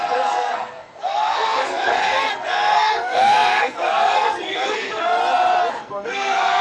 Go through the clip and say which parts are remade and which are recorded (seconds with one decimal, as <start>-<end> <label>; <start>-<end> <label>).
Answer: 0.0-5.2 remade; 5.2-5.7 recorded; 5.7-6.6 remade